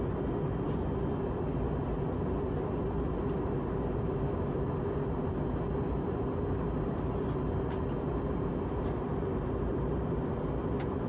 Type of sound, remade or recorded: recorded